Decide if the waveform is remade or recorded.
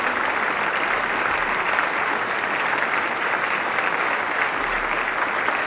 recorded